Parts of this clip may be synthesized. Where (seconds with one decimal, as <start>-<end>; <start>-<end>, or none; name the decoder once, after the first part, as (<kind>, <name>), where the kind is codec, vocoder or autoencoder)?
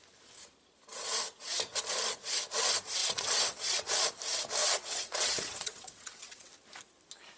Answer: 3.0-3.9 (vocoder, WaveNeXt); 4.6-6.5